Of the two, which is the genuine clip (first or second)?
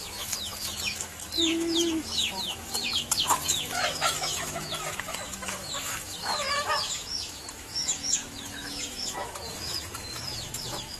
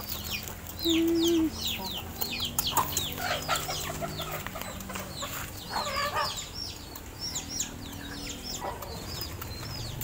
second